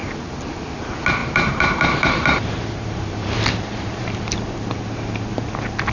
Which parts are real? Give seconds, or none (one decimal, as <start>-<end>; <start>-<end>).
0.6-1.2; 4.7-5.9